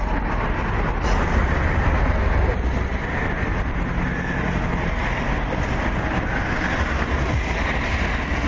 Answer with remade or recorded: recorded